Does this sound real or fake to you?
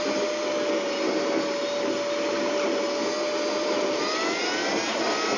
real